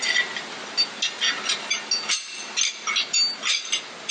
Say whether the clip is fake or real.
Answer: real